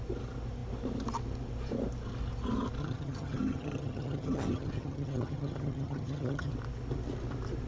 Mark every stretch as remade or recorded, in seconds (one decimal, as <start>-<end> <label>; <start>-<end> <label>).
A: 0.0-2.8 recorded; 2.8-6.5 remade; 6.5-7.7 recorded